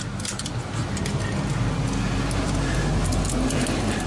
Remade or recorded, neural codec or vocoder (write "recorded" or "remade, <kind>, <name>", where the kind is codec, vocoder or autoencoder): recorded